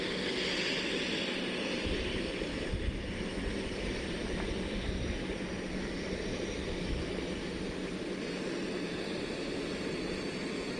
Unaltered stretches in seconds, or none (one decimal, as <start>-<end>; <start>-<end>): 0.0-2.5; 4.3-6.3